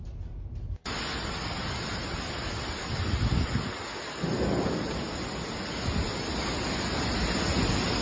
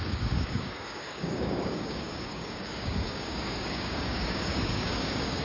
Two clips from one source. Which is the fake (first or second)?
second